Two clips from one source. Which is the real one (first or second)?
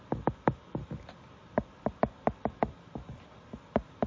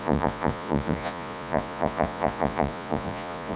first